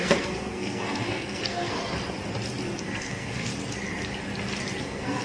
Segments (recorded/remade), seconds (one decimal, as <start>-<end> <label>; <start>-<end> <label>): 0.0-1.8 remade; 1.8-2.8 recorded; 2.8-3.5 remade; 3.5-4.8 recorded; 4.8-5.2 remade